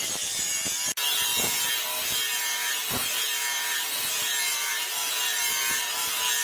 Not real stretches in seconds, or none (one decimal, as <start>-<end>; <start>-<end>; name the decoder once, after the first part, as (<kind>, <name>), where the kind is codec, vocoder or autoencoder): 0.0-1.3 (vocoder, BigVGAN v2); 2.4-6.4